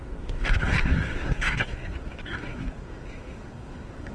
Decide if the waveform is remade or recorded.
remade